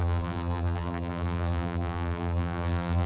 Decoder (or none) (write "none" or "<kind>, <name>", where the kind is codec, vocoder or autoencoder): vocoder, BigVGAN v2